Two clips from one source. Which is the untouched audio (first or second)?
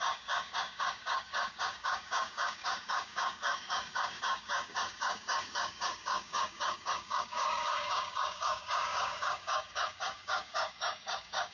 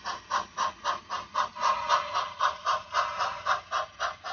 second